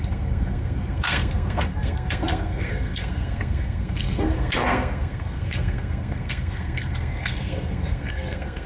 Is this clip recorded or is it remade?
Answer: remade